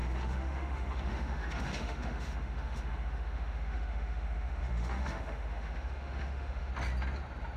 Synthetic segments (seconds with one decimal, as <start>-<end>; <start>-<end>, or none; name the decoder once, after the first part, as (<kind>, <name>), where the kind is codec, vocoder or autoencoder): 0.0-6.7 (autoencoder, DAC-VAE)